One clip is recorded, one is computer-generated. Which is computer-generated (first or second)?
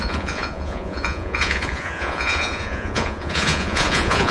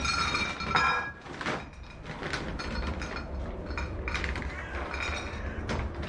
first